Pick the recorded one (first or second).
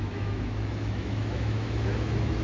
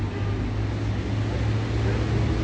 second